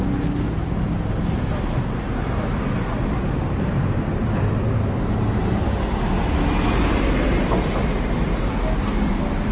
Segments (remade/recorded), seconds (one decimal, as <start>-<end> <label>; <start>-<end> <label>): 0.0-9.5 recorded